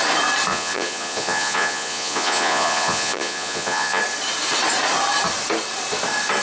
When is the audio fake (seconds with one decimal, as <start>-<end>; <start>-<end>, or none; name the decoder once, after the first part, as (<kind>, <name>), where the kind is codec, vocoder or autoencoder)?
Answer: 0.5-4.0 (vocoder, Vocos)